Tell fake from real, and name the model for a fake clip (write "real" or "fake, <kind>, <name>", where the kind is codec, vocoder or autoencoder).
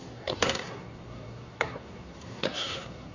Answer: fake, codec, SNAC